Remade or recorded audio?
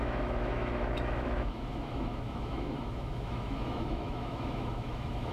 remade